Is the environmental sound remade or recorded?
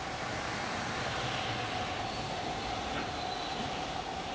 recorded